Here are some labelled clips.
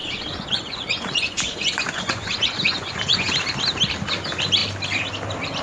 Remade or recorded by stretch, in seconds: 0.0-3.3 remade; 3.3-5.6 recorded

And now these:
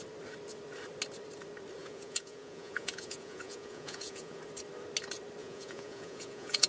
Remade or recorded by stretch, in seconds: 0.0-1.8 recorded; 1.8-4.4 remade; 4.4-5.4 recorded; 5.4-6.7 remade

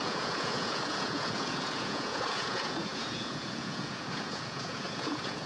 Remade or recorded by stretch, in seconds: 0.0-5.5 remade

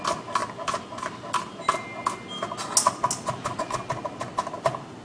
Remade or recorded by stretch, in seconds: 0.0-5.0 recorded

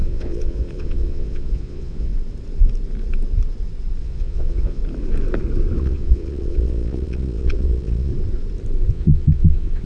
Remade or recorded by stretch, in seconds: 0.0-2.1 remade; 2.1-4.0 recorded; 4.0-4.8 remade; 4.8-5.8 recorded; 5.8-8.1 remade; 8.1-8.9 recorded; 8.9-9.9 remade

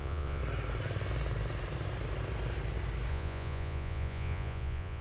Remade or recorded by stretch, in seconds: 0.0-0.4 remade; 0.4-3.1 recorded; 3.1-5.0 remade

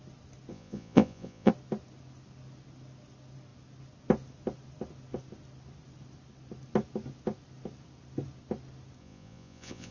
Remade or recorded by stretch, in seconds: 0.0-0.5 recorded; 0.5-1.5 remade; 1.5-9.0 recorded; 9.0-9.9 remade